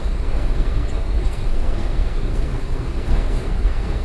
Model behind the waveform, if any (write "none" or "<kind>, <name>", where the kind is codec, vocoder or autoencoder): codec, SNAC